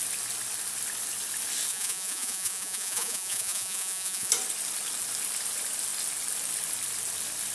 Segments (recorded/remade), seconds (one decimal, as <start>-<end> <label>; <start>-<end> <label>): 0.0-1.7 recorded; 1.7-4.3 remade; 4.3-7.5 recorded